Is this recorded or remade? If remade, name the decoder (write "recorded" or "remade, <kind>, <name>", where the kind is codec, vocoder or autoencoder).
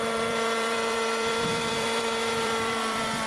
remade, vocoder, BigVGAN v2